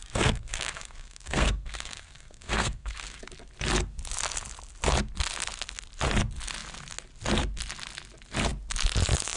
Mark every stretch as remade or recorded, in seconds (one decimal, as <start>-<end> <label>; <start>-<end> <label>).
0.0-3.2 remade; 3.2-9.4 recorded